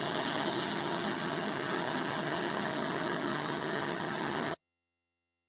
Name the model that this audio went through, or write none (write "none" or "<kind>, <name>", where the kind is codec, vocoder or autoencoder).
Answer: vocoder, HiFi-GAN